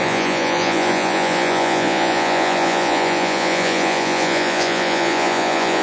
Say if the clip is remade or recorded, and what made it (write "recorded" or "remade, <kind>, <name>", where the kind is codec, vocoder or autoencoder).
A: remade, vocoder, Vocos